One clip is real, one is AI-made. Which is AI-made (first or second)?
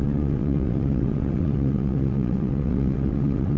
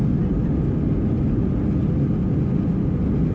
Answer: first